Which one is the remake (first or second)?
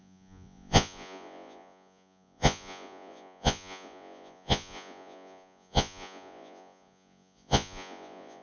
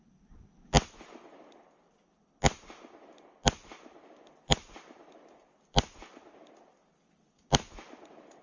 first